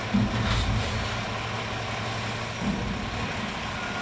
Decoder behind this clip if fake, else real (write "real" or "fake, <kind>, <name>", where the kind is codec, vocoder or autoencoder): real